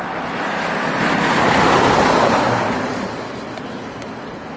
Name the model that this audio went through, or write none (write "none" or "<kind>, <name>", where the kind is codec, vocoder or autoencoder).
none